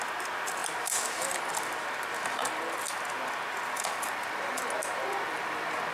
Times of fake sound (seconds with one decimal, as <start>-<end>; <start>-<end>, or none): none